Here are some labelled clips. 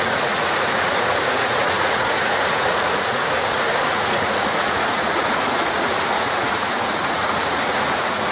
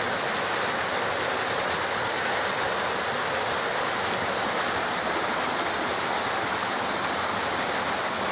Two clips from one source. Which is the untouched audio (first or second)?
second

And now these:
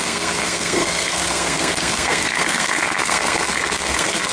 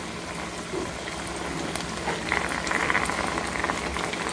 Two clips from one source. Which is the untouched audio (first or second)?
second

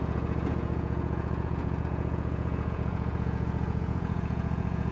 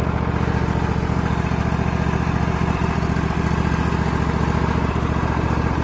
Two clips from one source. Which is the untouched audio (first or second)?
second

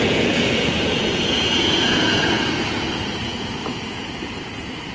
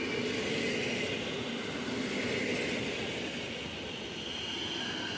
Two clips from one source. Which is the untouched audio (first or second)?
second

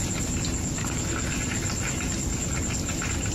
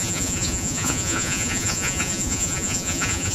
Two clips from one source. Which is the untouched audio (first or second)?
first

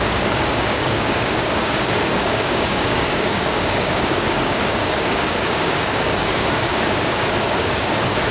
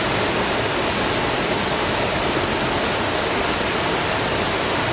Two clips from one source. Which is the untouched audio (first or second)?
second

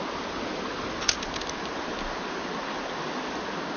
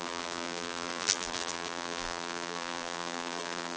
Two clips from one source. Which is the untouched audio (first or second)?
first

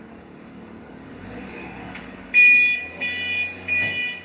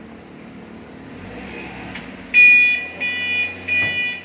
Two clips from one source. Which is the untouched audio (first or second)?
second